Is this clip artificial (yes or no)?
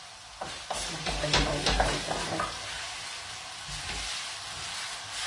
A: no